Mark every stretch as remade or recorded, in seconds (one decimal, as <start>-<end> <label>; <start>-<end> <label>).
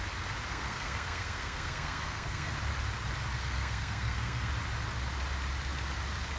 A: 0.0-0.5 recorded; 0.5-2.5 remade; 2.5-3.4 recorded; 3.4-4.5 remade; 4.5-6.4 recorded